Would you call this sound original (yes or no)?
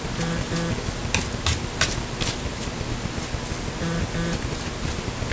yes